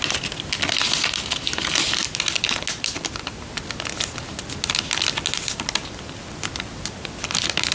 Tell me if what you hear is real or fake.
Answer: real